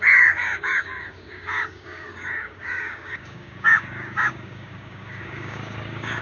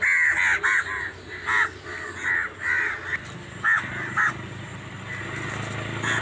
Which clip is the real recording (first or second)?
second